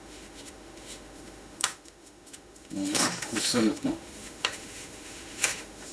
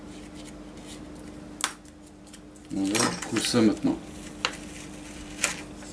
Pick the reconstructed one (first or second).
first